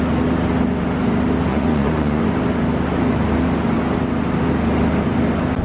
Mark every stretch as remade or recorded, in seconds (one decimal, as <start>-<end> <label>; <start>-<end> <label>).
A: 0.0-1.5 recorded; 1.5-2.2 remade; 2.2-5.6 recorded